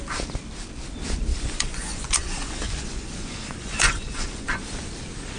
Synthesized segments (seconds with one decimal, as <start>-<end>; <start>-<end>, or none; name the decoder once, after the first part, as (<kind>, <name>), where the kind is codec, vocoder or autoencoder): 1.3-4.5 (vocoder, Vocos)